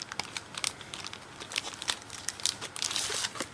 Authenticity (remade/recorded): recorded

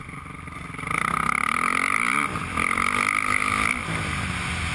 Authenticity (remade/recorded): recorded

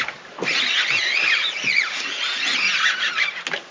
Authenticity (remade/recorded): recorded